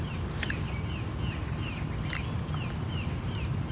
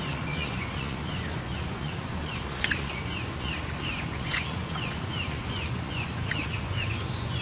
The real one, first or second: first